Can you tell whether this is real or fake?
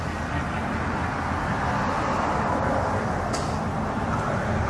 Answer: real